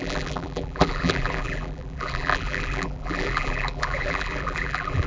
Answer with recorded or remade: remade